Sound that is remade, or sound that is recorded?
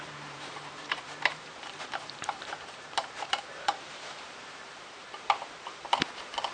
remade